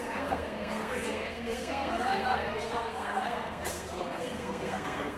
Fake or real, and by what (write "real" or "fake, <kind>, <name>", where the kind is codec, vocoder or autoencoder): fake, codec, SNAC